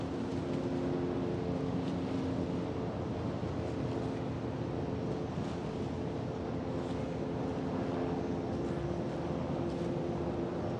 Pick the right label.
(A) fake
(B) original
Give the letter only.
B